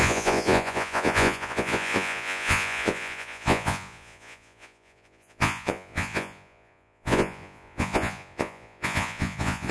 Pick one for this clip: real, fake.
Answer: fake